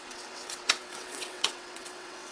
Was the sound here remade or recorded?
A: remade